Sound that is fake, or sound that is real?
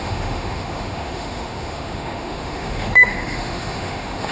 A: fake